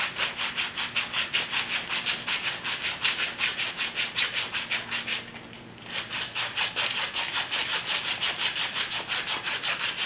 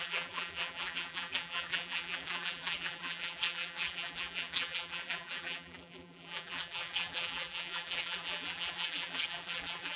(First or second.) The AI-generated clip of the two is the second